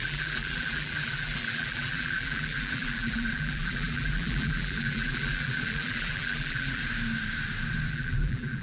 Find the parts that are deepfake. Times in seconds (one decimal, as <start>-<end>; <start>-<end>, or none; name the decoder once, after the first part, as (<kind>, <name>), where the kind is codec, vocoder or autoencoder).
0.0-6.8 (vocoder, BigVGAN v2); 7.9-8.6